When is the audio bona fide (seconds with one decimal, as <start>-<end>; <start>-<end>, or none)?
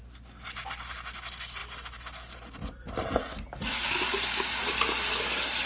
0.0-5.7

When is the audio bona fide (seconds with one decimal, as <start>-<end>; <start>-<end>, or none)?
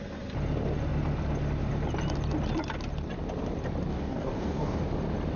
0.0-3.9; 4.8-5.4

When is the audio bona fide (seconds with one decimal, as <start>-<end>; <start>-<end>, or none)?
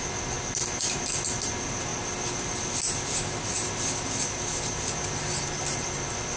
0.0-6.4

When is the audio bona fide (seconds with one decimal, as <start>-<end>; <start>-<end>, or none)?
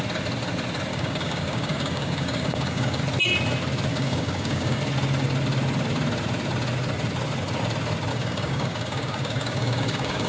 0.0-0.9; 3.0-3.9; 4.8-8.1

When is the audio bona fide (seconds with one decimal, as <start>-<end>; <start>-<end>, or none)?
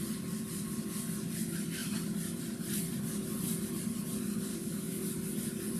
0.0-4.5; 5.0-5.8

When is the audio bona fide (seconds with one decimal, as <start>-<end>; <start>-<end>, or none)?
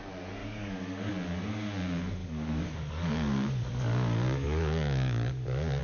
0.0-0.4; 1.1-2.2